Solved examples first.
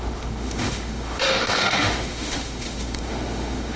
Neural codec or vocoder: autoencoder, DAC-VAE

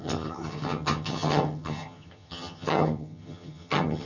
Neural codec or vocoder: vocoder, HiFi-GAN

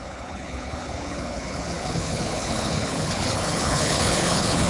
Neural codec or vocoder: codec, HILCodec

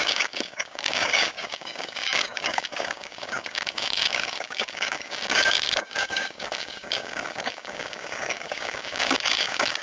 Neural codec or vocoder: codec, DAC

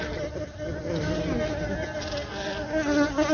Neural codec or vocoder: none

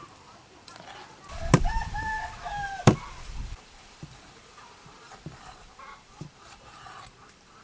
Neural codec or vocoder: vocoder, BigVGAN v2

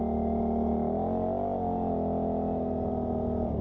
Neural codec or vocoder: none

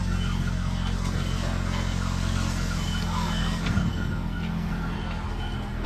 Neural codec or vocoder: codec, SNAC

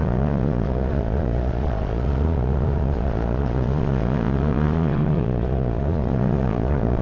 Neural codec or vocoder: vocoder, Vocos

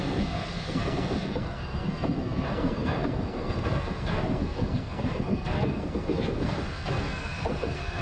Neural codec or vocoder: codec, SNAC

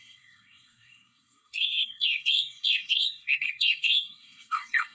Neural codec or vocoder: codec, SNAC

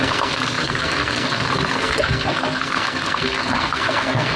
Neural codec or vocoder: codec, SNAC